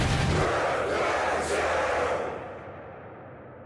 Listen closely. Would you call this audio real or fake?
real